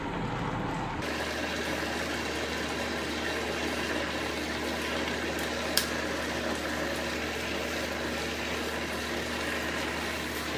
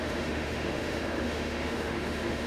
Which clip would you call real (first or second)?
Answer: first